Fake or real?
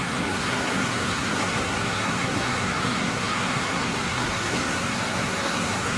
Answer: fake